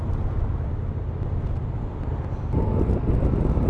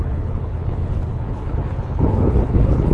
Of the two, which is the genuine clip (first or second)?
first